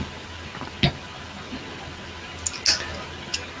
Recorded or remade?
recorded